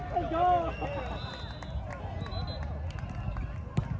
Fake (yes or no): no